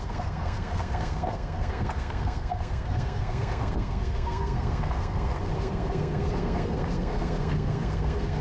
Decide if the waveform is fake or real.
fake